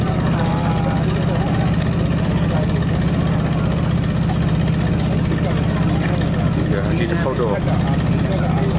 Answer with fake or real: real